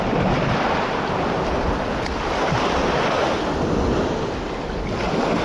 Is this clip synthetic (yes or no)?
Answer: no